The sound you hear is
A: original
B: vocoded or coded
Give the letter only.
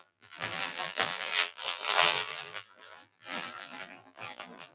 B